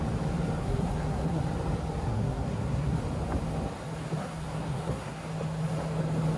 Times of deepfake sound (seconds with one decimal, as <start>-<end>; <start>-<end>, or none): 0.6-1.4; 2.1-3.0; 4.2-5.2